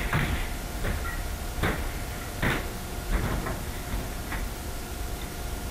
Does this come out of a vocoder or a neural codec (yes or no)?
no